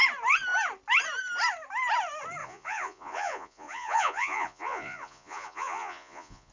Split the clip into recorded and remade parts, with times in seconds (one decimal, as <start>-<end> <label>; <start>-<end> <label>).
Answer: 0.0-2.4 recorded; 2.4-6.5 remade